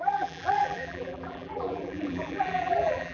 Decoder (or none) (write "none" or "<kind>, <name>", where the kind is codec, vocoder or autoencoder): vocoder, BigVGAN v2